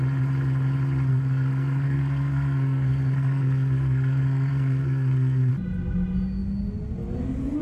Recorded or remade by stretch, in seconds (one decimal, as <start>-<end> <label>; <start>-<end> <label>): 0.0-1.1 recorded; 1.1-5.5 remade; 5.5-7.6 recorded